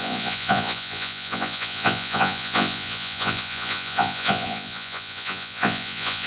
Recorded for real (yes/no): no